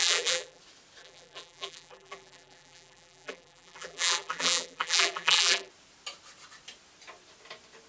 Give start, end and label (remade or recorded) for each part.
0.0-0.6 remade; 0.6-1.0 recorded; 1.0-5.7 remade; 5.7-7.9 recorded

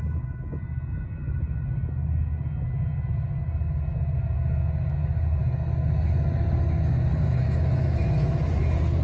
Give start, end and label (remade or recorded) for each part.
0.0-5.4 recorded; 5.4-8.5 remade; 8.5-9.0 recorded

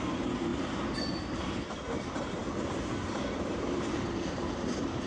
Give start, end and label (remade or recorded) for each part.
0.0-0.5 remade; 0.5-1.4 recorded; 1.4-2.4 remade; 2.4-3.1 recorded; 3.1-5.1 remade

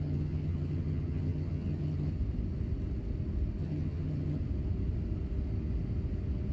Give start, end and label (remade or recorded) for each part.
0.0-2.1 remade; 2.1-3.6 recorded; 3.6-4.4 remade; 4.4-6.5 recorded

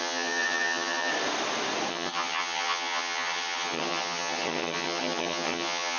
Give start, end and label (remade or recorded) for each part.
0.0-1.1 remade; 1.1-1.9 recorded; 1.9-6.0 remade

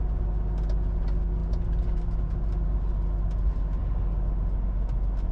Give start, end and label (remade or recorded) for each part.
0.0-5.3 recorded

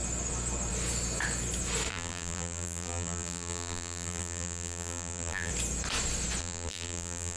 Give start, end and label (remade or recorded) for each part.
0.0-1.9 recorded; 1.9-5.5 remade; 5.5-6.4 recorded; 6.4-7.4 remade

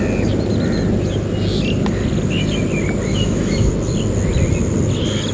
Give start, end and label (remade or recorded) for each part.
0.0-3.1 recorded; 3.1-3.7 remade; 3.7-5.3 recorded